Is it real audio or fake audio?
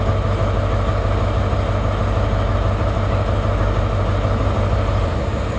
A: real